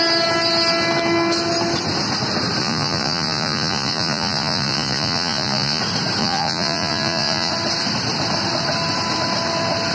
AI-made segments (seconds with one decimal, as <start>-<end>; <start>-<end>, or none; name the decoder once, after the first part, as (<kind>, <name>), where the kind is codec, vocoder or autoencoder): 2.6-5.8 (vocoder, Vocos); 6.2-7.5